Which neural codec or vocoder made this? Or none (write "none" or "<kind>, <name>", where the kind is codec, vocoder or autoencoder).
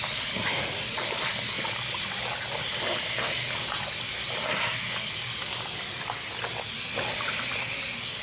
none